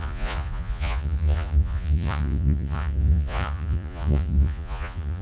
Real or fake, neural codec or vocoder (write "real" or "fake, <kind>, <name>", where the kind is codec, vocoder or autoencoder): fake, vocoder, Vocos